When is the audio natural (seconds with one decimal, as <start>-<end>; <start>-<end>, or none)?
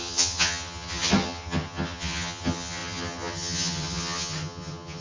none